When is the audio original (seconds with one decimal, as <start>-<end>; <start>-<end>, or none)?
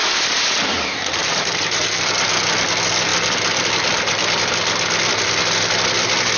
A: 2.1-6.4